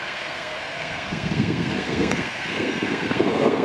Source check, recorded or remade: remade